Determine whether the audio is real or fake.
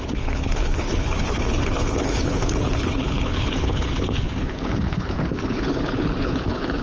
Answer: fake